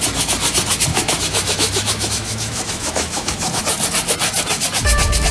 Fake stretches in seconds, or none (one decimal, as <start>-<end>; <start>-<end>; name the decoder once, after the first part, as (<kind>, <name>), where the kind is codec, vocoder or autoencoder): 0.9-3.6 (autoencoder, DAC-VAE)